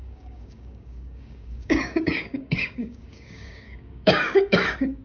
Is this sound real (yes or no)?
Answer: no